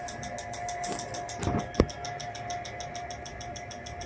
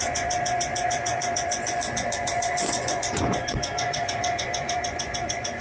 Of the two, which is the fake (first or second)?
second